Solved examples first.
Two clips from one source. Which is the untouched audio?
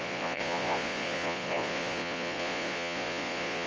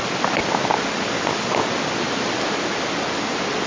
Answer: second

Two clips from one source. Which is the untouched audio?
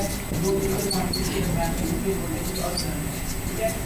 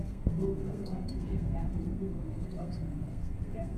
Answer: first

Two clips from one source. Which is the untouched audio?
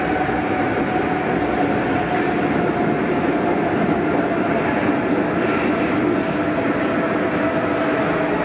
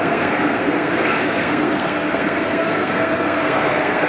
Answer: first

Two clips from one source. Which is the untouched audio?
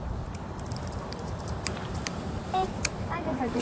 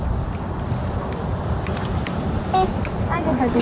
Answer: second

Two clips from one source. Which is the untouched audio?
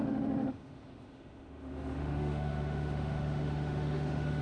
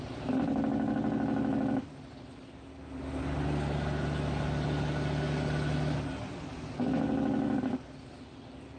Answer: second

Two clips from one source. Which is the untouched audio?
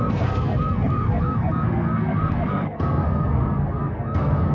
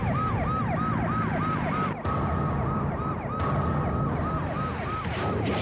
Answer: second